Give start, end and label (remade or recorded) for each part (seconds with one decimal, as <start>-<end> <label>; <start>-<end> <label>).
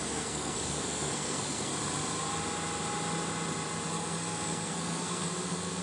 0.0-1.7 remade; 1.7-3.9 recorded; 3.9-5.8 remade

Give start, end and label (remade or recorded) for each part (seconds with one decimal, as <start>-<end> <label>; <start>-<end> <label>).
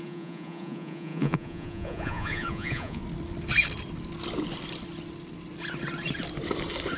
0.0-3.0 remade; 3.0-7.0 recorded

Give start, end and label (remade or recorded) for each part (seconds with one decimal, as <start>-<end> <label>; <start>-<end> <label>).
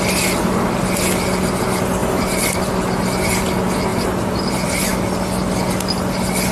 0.0-2.0 recorded; 2.0-2.7 remade; 2.7-6.5 recorded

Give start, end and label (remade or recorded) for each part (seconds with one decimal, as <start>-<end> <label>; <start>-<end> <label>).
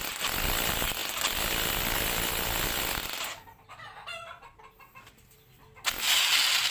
0.0-6.7 recorded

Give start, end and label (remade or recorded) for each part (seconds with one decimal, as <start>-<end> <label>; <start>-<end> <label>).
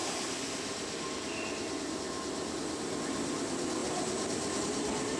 0.0-5.2 recorded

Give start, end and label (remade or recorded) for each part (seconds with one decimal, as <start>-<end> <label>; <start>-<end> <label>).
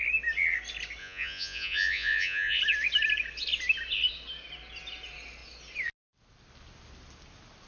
0.0-1.0 recorded; 1.0-2.6 remade; 2.6-7.7 recorded